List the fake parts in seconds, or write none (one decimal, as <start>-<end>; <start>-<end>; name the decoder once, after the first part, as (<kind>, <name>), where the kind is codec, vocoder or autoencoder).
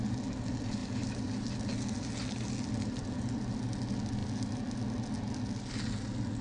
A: none